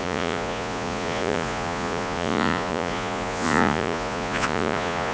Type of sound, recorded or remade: remade